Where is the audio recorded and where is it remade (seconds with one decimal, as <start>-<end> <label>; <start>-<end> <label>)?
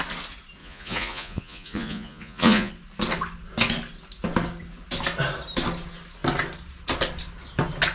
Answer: 0.0-0.6 recorded; 0.6-2.7 remade; 2.7-7.9 recorded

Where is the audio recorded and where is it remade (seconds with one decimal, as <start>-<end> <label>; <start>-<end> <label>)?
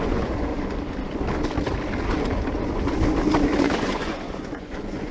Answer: 0.0-0.5 remade; 0.5-3.6 recorded; 3.6-5.1 remade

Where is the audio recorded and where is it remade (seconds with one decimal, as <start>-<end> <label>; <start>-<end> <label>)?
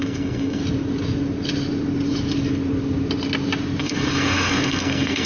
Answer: 0.0-0.6 remade; 0.6-3.8 recorded; 3.8-5.3 remade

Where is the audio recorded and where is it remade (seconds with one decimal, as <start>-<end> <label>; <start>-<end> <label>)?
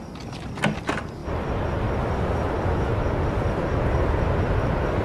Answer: 0.0-5.0 recorded